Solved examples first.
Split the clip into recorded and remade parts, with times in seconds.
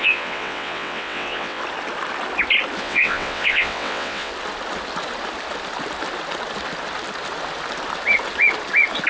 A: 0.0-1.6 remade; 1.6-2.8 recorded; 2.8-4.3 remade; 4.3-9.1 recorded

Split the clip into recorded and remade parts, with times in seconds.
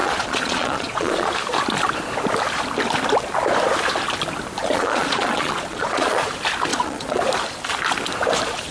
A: 0.0-1.3 remade; 1.3-4.6 recorded; 4.6-6.3 remade; 6.3-6.7 recorded; 6.7-7.2 remade; 7.2-8.7 recorded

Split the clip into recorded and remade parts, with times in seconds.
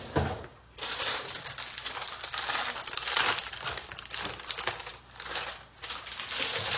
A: 0.0-6.8 recorded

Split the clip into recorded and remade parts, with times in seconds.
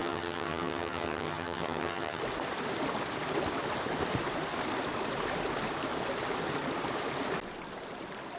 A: 0.0-2.2 remade; 2.2-8.4 recorded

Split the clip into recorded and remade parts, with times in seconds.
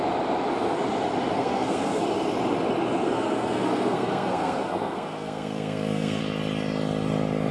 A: 0.0-1.4 recorded; 1.4-2.0 remade; 2.0-3.1 recorded; 3.1-6.2 remade; 6.2-7.5 recorded